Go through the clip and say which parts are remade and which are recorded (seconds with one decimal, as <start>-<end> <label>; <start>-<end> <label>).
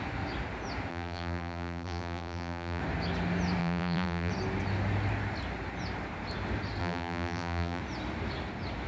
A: 0.0-0.9 recorded; 0.9-2.8 remade; 2.8-3.6 recorded; 3.6-4.3 remade; 4.3-6.8 recorded; 6.8-7.8 remade; 7.8-8.9 recorded